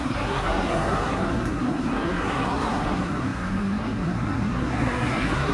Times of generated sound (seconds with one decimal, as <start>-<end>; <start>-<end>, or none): 0.0-5.5